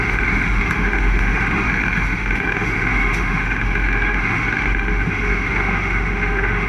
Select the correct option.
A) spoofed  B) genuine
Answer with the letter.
A